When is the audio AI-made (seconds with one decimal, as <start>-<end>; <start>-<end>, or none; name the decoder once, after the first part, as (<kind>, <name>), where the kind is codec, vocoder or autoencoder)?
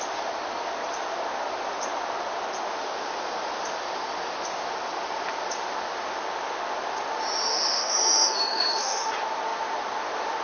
7.5-9.1 (autoencoder, DAC-VAE)